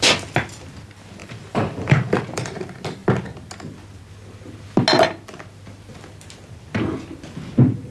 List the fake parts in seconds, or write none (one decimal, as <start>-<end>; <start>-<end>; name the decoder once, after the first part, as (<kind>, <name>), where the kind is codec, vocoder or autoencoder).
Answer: 1.2-2.6 (vocoder, BigVGAN v2)